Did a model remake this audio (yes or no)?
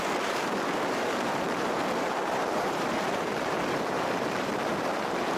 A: yes